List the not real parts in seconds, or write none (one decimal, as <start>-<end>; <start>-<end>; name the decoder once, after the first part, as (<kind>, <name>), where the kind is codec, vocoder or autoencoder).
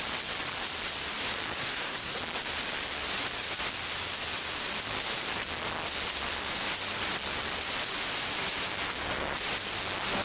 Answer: 1.6-2.2 (codec, SNAC)